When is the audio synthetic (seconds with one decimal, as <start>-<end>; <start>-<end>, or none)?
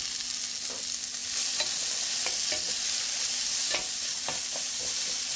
none